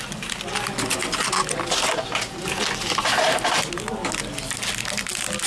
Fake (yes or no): no